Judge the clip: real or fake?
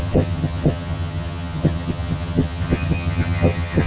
fake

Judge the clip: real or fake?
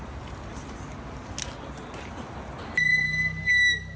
real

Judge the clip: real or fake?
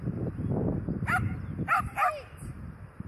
fake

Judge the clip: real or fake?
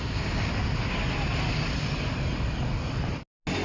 real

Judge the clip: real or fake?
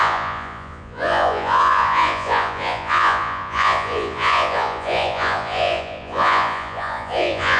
fake